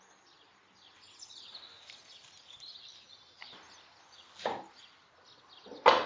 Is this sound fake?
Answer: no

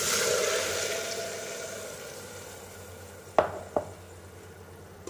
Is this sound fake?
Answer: no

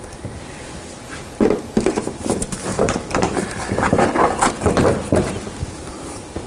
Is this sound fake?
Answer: yes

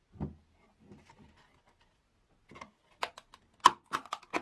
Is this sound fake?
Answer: no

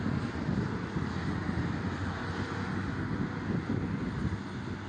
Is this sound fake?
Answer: no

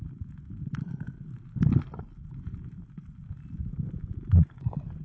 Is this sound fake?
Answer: no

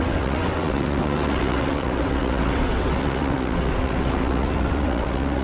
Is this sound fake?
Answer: yes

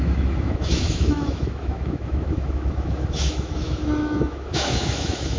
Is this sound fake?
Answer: yes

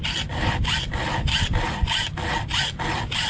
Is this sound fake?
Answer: no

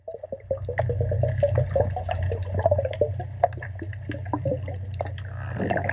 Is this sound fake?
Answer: no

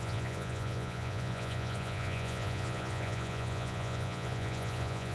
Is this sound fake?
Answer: yes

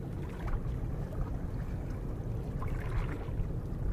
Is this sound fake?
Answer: no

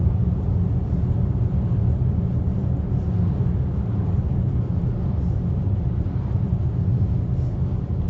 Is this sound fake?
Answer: no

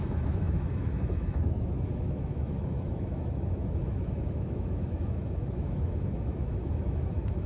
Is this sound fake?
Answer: yes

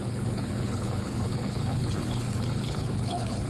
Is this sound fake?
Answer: yes